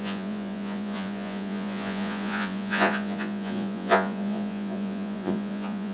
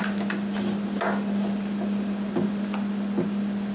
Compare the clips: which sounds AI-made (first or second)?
first